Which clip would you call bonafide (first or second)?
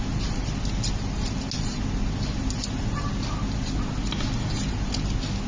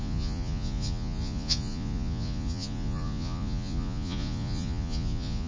first